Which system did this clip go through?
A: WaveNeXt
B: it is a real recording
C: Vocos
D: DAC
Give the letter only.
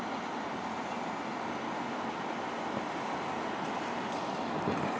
B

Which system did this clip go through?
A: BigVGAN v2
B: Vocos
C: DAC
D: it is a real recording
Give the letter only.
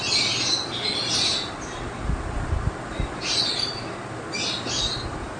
D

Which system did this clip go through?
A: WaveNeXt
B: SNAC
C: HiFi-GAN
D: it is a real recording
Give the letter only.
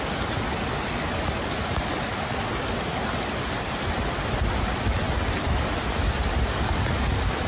D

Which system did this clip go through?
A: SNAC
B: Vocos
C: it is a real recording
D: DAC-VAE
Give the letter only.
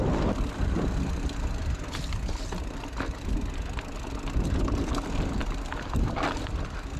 C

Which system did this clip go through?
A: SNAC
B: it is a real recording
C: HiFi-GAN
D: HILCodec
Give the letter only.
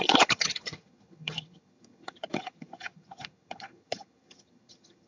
C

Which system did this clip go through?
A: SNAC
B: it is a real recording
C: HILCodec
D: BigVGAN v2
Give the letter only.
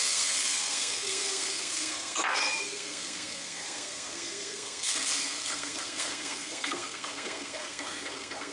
A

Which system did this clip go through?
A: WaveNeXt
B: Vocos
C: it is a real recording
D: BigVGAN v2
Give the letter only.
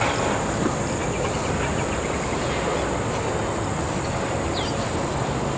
C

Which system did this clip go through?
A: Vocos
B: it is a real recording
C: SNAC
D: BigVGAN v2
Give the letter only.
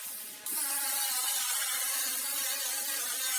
B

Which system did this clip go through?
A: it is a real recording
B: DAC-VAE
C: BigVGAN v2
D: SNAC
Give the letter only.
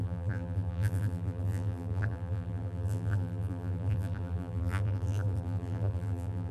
C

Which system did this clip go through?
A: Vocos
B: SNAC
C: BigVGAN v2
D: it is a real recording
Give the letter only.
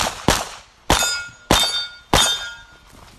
D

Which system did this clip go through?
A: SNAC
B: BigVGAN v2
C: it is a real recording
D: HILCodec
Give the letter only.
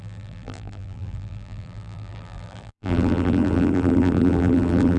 B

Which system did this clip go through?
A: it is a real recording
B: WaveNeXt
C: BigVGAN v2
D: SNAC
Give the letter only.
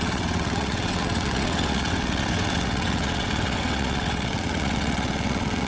B